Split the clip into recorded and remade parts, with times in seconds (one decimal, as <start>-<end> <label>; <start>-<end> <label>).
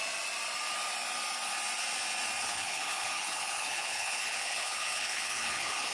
0.0-2.4 recorded; 2.4-5.9 remade